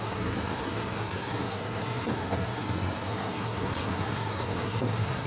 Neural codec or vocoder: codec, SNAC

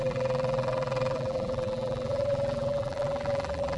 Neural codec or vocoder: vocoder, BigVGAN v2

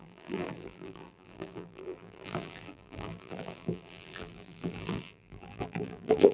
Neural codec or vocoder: vocoder, BigVGAN v2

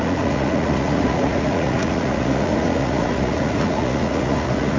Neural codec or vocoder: vocoder, Vocos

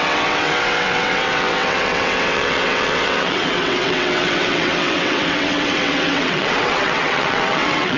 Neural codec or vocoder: vocoder, WaveNeXt